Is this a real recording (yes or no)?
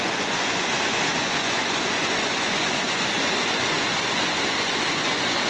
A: no